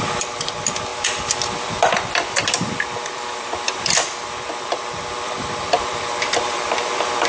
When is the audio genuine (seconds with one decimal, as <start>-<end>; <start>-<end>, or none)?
none